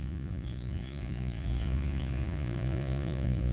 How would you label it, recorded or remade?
remade